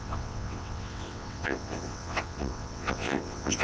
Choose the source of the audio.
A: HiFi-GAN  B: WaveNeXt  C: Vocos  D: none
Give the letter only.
B